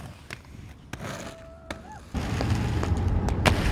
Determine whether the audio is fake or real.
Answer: real